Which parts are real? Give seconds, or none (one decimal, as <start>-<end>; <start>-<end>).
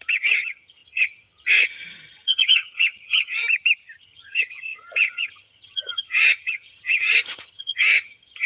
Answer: 3.4-4.0